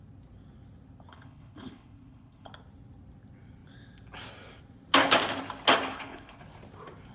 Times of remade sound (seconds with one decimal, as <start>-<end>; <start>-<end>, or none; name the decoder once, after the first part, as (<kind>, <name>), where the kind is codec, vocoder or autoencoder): 1.1-2.5 (codec, HILCodec); 5.9-6.4